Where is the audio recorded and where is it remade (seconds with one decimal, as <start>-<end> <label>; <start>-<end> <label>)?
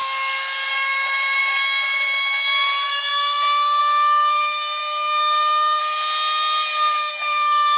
0.0-0.7 recorded; 0.7-5.8 remade; 5.8-7.1 recorded; 7.1-7.8 remade